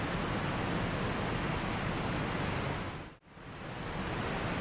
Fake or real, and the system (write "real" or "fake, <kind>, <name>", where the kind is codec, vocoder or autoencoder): real